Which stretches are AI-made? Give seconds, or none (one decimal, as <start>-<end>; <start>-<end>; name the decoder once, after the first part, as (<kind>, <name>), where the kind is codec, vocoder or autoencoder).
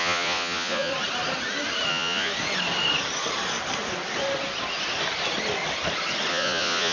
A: 0.0-0.9 (vocoder, Vocos); 1.9-2.3; 6.3-6.9